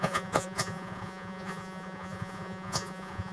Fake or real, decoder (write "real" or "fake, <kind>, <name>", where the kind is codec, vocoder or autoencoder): fake, vocoder, Vocos